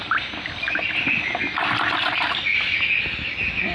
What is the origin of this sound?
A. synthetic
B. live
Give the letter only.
B